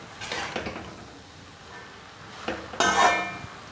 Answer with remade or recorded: recorded